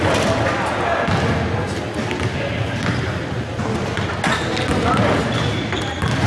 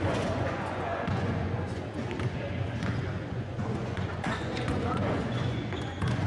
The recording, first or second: first